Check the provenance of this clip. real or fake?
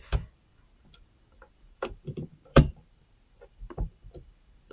fake